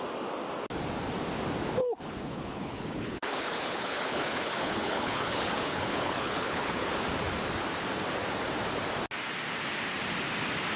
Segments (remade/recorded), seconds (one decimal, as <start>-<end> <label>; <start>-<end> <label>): 0.0-1.8 recorded; 1.8-6.9 remade; 6.9-10.8 recorded